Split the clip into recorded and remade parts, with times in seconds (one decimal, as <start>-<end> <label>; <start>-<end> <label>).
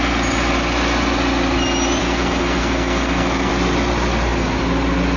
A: 0.0-2.0 recorded; 2.0-3.5 remade; 3.5-5.2 recorded